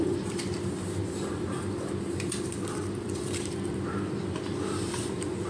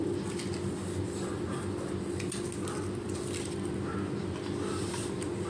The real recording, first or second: second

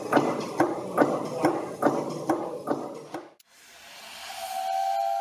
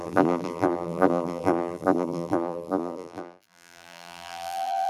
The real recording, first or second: first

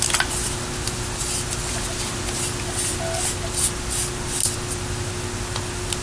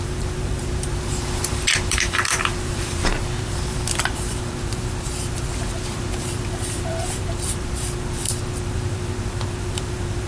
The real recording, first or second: first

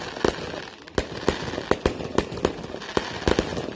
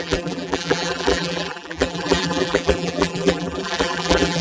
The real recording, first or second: first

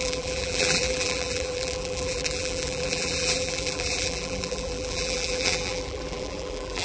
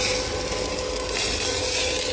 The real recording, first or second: second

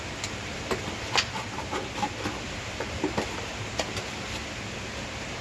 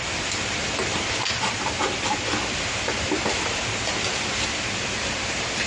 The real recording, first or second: first